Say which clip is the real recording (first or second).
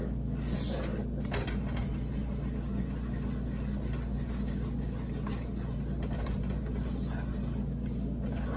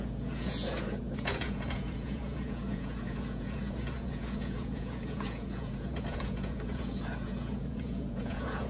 first